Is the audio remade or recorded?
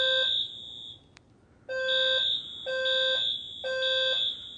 recorded